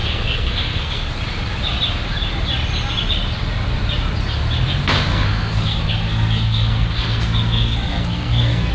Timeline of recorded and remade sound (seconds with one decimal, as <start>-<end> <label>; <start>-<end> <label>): 0.0-1.1 remade; 1.1-5.1 recorded; 5.1-8.7 remade